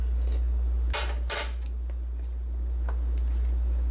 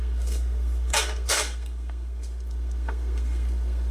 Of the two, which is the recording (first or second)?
first